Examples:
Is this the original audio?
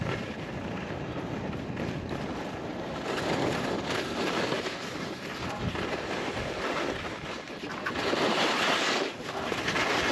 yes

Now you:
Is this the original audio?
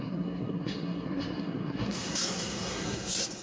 no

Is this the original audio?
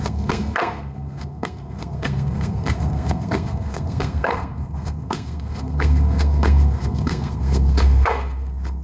no